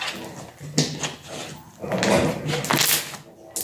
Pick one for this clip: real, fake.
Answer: real